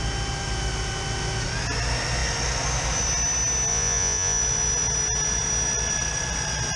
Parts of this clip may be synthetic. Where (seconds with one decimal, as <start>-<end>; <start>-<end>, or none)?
3.7-4.4